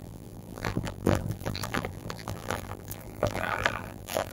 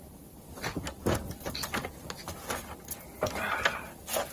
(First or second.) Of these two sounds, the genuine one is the second